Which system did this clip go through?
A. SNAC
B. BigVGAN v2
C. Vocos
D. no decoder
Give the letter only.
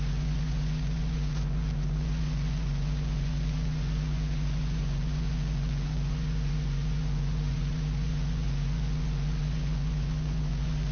C